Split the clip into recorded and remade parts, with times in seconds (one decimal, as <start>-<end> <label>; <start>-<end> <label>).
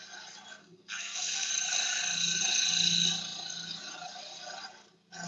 0.0-0.6 recorded; 0.6-1.5 remade; 1.5-5.3 recorded